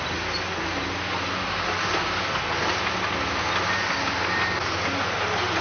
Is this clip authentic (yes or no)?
yes